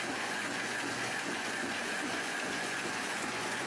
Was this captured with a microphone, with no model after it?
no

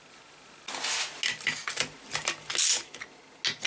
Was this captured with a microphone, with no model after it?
yes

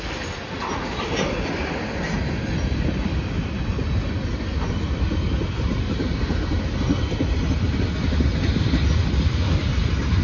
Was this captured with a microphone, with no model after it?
yes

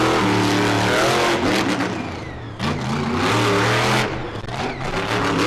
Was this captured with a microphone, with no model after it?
yes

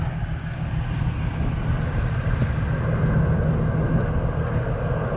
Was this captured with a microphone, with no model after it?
yes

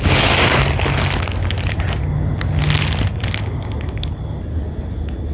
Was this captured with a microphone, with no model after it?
yes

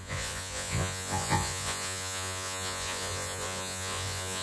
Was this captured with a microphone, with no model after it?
no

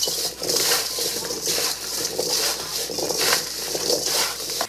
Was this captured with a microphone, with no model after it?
yes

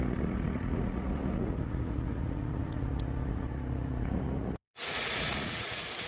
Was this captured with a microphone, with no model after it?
no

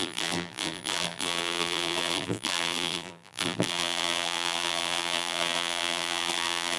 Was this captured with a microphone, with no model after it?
no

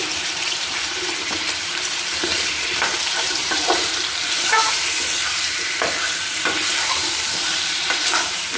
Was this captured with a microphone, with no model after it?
no